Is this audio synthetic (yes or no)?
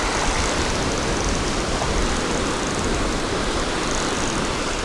no